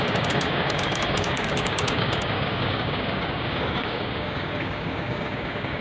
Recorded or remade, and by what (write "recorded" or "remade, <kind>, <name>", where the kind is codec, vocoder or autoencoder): remade, codec, DAC